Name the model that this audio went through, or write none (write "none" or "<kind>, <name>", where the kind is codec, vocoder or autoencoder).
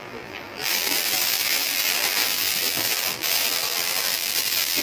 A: vocoder, BigVGAN v2